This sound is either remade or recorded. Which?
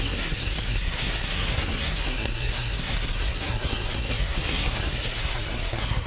remade